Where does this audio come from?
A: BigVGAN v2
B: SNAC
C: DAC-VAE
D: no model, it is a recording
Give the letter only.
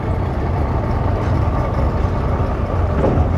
D